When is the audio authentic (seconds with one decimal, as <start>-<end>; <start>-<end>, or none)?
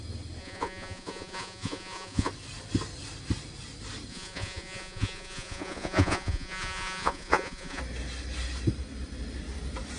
0.0-0.4; 2.3-4.1; 7.8-10.0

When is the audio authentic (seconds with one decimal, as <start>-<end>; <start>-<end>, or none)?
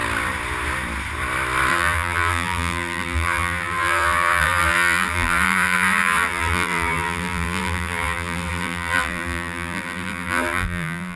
0.0-1.7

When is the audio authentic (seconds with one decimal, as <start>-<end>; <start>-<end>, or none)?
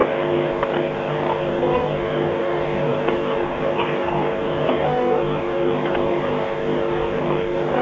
none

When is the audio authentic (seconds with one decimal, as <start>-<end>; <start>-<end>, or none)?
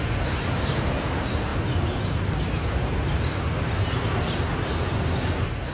0.0-5.7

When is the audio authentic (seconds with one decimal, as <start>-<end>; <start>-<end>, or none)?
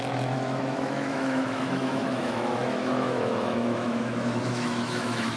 none